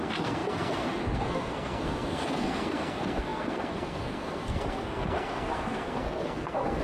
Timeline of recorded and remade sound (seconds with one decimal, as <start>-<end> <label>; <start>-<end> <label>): 0.0-6.8 remade